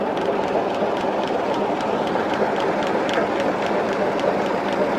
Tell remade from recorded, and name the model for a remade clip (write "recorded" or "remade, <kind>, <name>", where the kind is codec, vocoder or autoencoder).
recorded